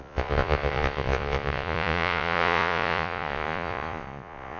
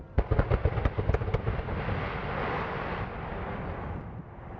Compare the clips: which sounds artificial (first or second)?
first